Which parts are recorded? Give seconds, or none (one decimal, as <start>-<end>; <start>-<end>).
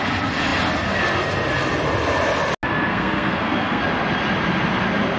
0.0-2.9; 3.8-5.2